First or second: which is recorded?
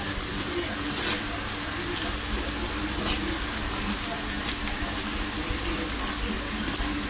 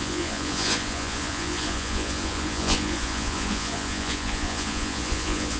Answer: first